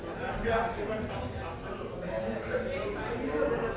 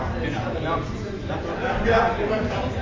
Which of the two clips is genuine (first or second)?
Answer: first